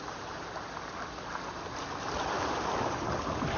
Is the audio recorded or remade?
recorded